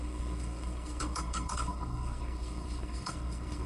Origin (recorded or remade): remade